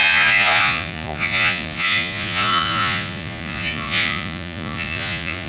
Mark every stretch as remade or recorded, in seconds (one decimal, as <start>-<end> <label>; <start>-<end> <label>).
0.0-5.5 remade